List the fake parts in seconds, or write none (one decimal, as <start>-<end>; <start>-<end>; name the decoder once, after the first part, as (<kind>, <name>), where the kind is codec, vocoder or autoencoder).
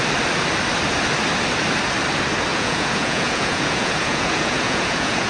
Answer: 2.5-5.3 (vocoder, Vocos)